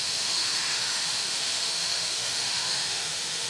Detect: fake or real fake